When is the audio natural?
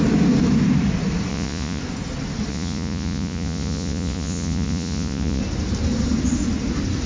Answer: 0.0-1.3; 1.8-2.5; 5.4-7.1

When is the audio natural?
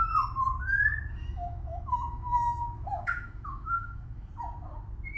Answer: 0.0-1.2; 4.3-5.2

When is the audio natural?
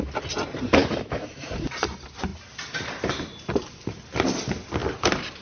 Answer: 0.0-0.8; 1.5-5.4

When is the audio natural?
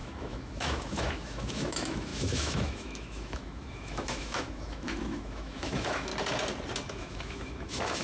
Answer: 6.1-6.9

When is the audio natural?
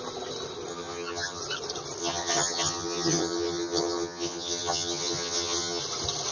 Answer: 0.0-0.7; 1.4-2.0; 5.8-6.3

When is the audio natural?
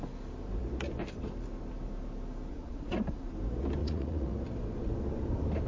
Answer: 0.0-2.5; 3.3-3.8; 4.4-5.7